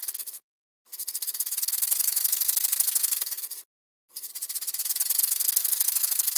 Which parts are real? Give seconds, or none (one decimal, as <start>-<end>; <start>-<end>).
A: 4.3-5.2